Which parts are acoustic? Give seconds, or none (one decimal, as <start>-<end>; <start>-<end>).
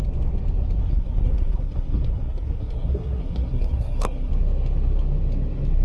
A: 0.0-0.8; 4.3-5.8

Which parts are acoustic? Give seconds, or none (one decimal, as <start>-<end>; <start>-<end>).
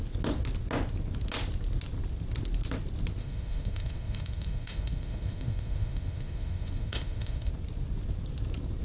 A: 0.0-3.2; 7.5-8.8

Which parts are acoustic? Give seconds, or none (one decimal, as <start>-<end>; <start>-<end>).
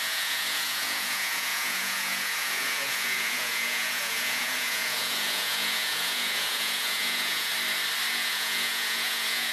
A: 7.5-8.1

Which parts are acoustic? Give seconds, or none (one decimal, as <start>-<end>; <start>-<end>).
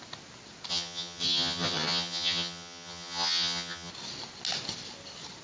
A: 0.0-0.7; 3.9-5.4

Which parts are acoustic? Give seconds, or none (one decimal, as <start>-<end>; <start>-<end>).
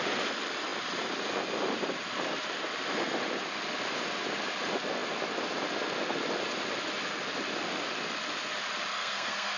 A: 0.0-8.9